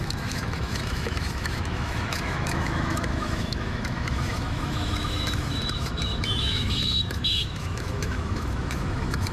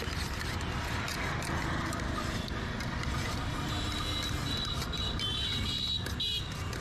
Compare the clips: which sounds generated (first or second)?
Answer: first